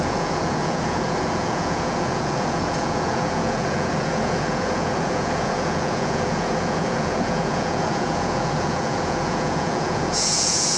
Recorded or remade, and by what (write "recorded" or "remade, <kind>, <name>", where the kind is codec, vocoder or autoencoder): remade, vocoder, Vocos